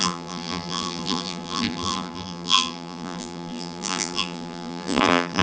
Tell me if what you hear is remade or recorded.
remade